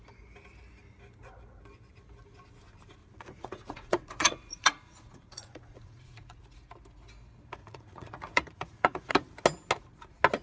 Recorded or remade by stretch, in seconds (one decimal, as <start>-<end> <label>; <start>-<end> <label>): 0.0-3.0 recorded; 3.0-6.4 remade; 6.4-7.6 recorded; 7.6-9.1 remade; 9.1-10.4 recorded